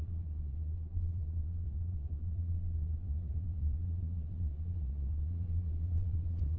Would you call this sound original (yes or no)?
no